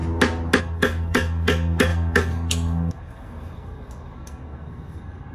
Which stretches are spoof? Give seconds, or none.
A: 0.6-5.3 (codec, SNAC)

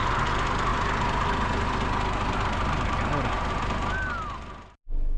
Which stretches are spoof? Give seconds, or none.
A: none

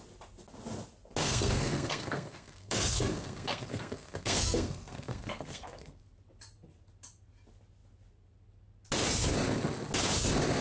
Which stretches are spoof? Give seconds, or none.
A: 1.2-6.0 (codec, SNAC)

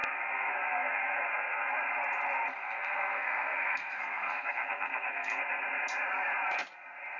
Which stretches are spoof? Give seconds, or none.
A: 0.0-1.7 (codec, SNAC); 2.5-5.4

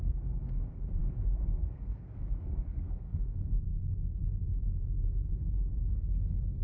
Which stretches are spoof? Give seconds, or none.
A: 0.0-3.7 (codec, SNAC); 5.8-6.6